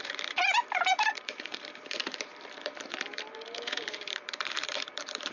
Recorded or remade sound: remade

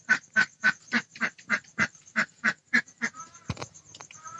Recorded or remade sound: remade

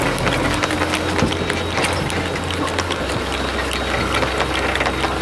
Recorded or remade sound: recorded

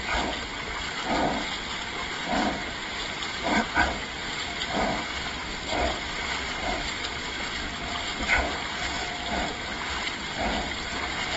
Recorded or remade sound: recorded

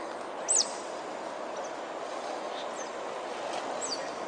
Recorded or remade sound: recorded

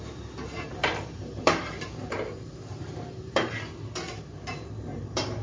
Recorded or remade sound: remade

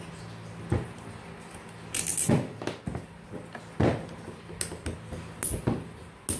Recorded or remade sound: recorded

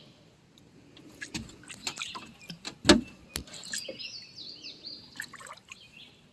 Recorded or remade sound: recorded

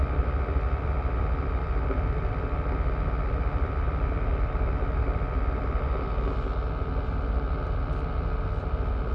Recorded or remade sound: recorded